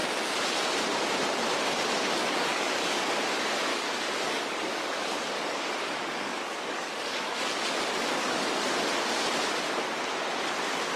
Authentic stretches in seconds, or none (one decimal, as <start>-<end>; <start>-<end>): 0.0-2.2; 3.0-3.7; 7.5-8.2; 8.7-11.0